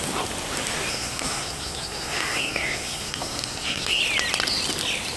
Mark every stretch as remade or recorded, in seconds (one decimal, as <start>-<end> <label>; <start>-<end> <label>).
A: 0.0-0.9 recorded; 0.9-4.0 remade; 4.0-5.2 recorded